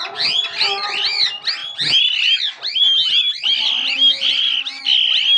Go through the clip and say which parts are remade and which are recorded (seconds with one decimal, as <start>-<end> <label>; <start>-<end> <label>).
0.0-5.4 recorded